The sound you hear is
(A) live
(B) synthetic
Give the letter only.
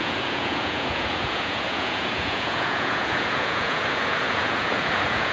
B